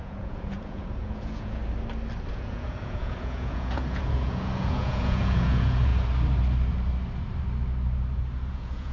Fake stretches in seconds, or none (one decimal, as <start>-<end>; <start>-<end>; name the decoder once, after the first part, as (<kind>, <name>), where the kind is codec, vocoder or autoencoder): 0.0-1.6 (vocoder, Vocos); 2.3-5.9; 8.5-8.9